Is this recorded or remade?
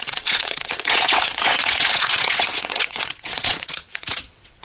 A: remade